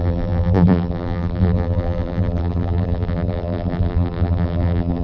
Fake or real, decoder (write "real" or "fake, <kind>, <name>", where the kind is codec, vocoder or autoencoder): fake, vocoder, BigVGAN v2